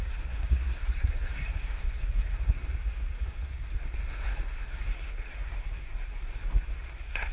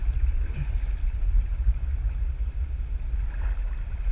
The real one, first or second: second